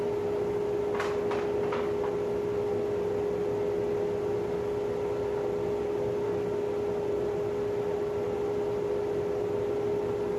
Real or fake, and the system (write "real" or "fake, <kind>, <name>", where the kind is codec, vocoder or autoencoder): real